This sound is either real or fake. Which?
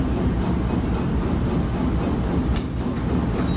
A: real